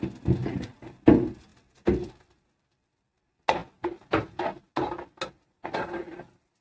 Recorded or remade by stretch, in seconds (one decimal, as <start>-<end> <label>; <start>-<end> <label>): 0.0-6.6 recorded